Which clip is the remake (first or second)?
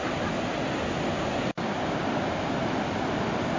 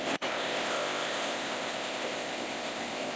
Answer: second